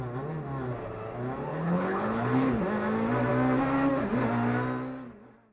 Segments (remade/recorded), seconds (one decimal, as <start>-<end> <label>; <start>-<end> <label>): 0.0-1.5 recorded; 1.5-2.6 remade; 2.6-5.5 recorded